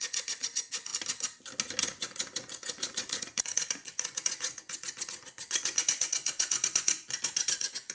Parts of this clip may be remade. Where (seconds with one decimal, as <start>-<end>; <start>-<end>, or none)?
0.0-0.9; 1.8-7.9